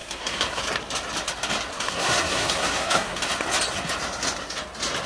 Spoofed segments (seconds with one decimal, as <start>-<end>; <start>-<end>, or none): 0.0-0.6; 1.7-3.2